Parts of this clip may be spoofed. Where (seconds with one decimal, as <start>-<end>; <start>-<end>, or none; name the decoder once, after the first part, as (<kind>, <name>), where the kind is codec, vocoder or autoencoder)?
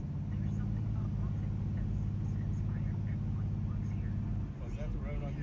none